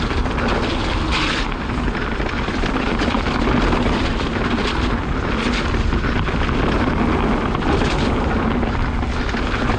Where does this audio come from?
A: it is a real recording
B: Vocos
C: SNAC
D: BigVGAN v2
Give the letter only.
A